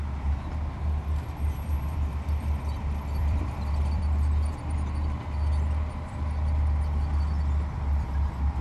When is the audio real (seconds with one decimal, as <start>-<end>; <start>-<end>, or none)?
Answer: 0.0-3.2; 4.0-8.6